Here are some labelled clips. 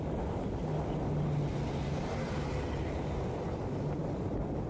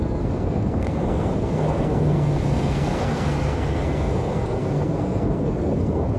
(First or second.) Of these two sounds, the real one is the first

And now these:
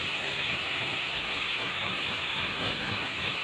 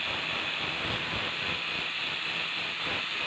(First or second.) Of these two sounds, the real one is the second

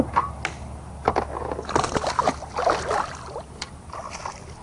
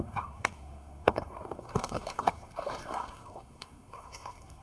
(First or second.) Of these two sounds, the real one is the first